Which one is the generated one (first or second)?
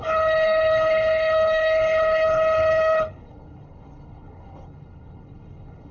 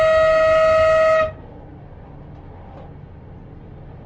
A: first